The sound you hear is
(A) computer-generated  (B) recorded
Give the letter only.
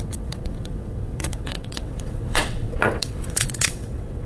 A